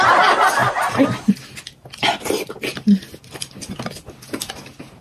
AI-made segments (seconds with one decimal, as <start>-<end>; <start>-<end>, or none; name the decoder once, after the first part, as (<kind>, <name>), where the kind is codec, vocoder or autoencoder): none